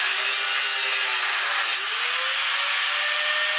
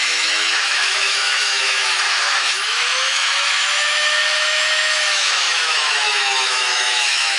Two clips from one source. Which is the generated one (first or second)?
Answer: second